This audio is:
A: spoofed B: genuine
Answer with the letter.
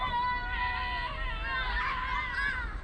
B